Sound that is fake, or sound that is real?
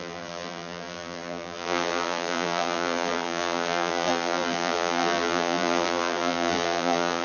fake